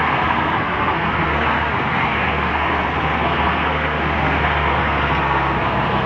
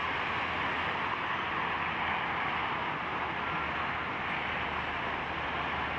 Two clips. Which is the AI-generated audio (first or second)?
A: first